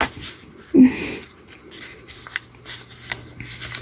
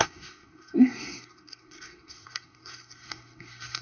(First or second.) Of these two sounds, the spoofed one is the second